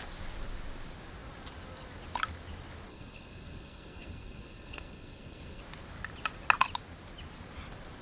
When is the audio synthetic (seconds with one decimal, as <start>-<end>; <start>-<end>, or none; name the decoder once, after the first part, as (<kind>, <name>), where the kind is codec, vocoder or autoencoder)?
2.9-5.6 (codec, SNAC)